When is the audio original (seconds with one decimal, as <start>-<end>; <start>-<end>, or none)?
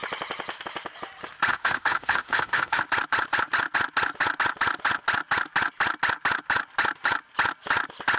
0.0-1.5; 2.8-8.2